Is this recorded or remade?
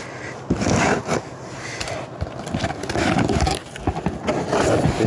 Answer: recorded